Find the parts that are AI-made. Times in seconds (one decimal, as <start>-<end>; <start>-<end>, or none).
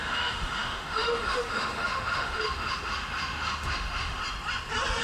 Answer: 0.0-4.2